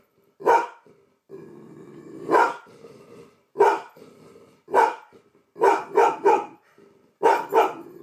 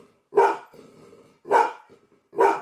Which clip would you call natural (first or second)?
second